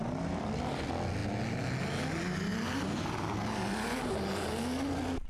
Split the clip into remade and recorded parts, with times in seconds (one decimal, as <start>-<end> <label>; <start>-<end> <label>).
0.0-5.3 recorded